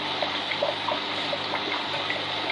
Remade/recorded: remade